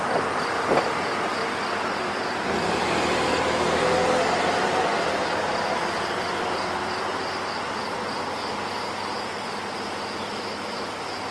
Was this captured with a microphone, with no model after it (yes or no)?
yes